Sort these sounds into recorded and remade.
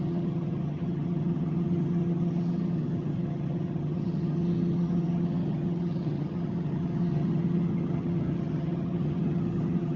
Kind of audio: remade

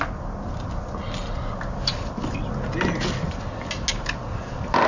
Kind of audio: recorded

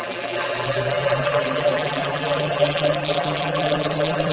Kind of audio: remade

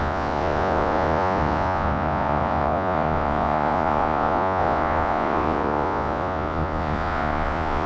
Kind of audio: remade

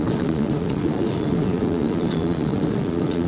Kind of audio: remade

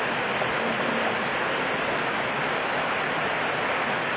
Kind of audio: recorded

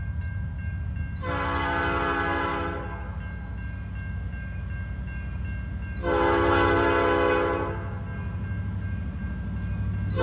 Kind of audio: recorded